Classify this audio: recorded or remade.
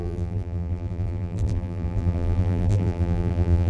remade